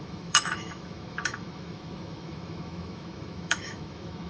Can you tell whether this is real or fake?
fake